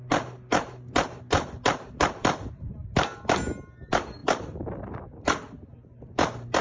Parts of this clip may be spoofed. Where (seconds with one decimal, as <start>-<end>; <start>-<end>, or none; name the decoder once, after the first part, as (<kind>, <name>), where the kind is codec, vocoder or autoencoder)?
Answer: 2.2-2.7 (vocoder, BigVGAN v2); 4.2-5.0